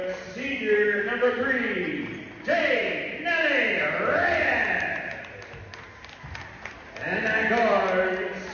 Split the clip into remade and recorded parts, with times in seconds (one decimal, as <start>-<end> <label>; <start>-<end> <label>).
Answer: 0.0-1.3 remade; 1.3-8.5 recorded